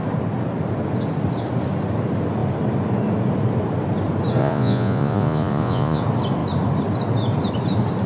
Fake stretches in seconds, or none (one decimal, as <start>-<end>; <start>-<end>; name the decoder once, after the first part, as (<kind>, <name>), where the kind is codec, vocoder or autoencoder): 4.4-6.0 (vocoder, Vocos)